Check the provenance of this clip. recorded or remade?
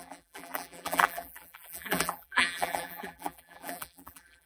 remade